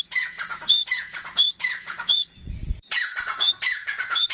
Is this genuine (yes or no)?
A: no